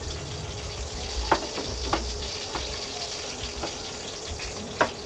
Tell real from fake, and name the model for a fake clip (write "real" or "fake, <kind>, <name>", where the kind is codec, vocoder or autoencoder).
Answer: real